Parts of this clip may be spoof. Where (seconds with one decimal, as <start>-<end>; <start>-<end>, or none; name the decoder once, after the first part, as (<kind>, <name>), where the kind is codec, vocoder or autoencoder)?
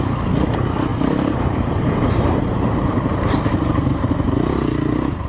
0.9-4.1 (vocoder, BigVGAN v2)